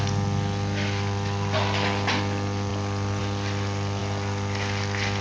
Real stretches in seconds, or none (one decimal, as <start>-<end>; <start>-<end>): 0.0-5.2